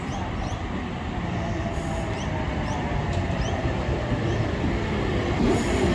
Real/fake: fake